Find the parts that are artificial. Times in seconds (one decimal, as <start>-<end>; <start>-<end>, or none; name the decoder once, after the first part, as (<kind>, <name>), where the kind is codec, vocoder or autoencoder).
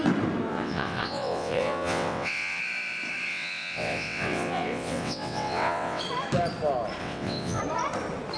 0.5-2.6 (vocoder, WaveNeXt); 3.3-6.0; 7.0-7.6